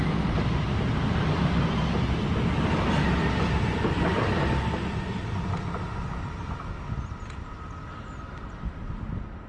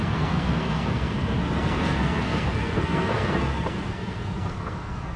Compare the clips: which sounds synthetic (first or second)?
second